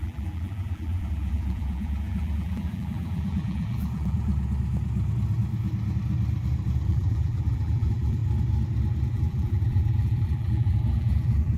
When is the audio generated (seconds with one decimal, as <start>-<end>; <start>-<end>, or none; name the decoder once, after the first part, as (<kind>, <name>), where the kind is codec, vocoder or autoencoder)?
0.0-4.3 (vocoder, BigVGAN v2); 6.9-8.2; 9.1-11.6